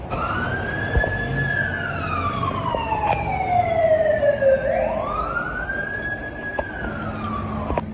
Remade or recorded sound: recorded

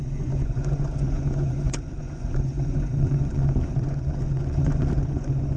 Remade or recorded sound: remade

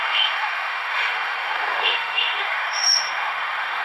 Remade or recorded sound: remade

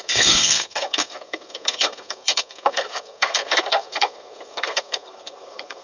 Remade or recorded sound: remade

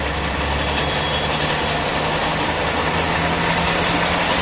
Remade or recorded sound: recorded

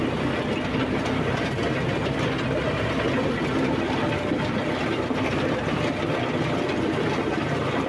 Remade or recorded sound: recorded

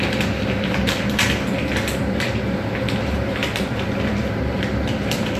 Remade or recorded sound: recorded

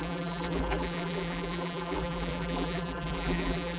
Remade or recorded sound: remade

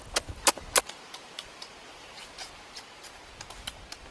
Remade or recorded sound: recorded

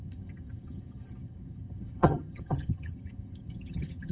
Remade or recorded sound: remade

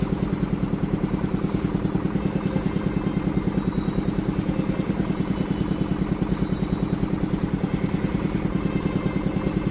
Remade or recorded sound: recorded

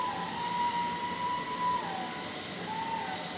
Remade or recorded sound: remade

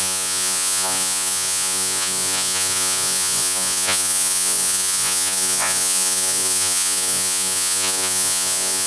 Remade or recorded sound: remade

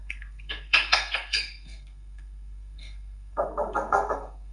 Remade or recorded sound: remade